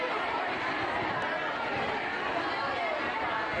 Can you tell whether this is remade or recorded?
recorded